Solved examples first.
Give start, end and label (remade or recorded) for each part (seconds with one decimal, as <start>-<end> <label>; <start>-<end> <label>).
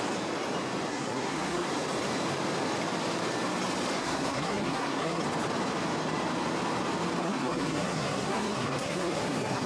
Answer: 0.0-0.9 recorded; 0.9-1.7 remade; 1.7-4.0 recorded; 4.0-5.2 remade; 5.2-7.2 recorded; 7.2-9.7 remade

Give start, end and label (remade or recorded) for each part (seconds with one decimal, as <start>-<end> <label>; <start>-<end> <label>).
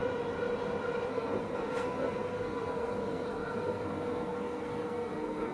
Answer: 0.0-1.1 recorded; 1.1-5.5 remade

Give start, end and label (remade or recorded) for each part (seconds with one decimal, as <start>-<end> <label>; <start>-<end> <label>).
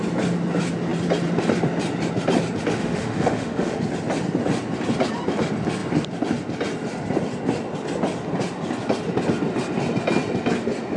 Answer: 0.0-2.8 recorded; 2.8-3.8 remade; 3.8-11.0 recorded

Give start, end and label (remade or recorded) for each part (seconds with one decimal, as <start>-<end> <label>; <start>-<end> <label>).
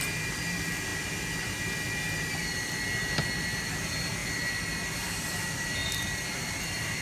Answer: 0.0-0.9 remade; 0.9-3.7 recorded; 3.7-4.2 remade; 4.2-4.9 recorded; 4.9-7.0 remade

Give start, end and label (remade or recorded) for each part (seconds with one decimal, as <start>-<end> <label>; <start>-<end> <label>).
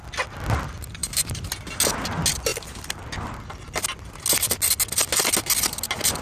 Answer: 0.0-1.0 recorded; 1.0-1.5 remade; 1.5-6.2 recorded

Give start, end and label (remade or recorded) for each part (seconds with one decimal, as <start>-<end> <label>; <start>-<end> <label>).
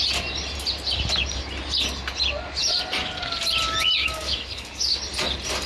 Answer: 0.0-4.0 recorded; 4.0-5.0 remade; 5.0-5.7 recorded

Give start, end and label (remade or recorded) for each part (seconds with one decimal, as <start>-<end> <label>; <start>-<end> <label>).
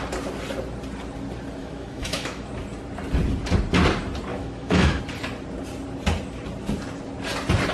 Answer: 0.0-1.6 recorded; 1.6-2.5 remade; 2.5-4.3 recorded; 4.3-5.0 remade; 5.0-7.7 recorded